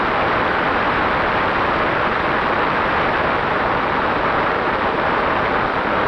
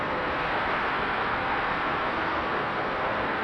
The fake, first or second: second